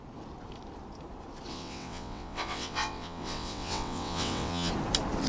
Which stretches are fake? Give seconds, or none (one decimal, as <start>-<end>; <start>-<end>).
1.5-4.7